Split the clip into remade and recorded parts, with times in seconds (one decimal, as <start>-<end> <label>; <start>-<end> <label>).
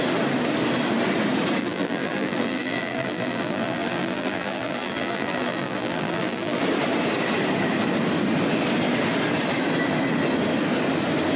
0.0-1.6 recorded; 1.6-6.6 remade; 6.6-11.4 recorded